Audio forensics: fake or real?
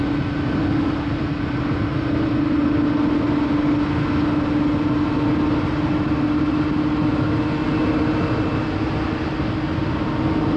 real